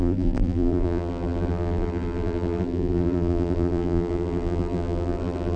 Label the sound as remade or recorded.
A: remade